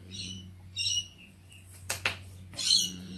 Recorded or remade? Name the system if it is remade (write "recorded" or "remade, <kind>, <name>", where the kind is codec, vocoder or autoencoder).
remade, vocoder, Vocos